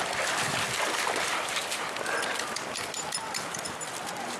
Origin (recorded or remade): recorded